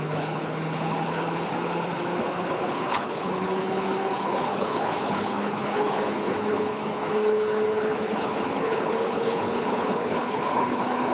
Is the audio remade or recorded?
remade